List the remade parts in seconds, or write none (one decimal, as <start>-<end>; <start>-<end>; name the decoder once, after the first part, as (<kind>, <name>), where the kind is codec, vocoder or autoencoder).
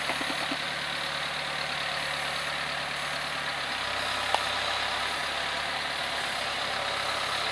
none